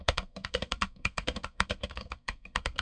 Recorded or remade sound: remade